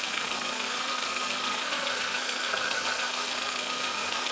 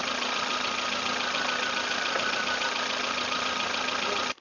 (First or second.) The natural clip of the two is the second